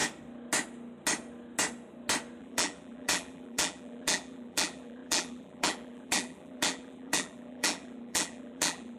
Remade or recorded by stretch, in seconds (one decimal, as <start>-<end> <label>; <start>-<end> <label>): 0.0-2.4 recorded; 2.4-9.0 remade